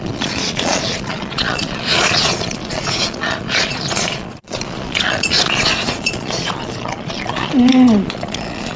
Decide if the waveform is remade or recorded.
remade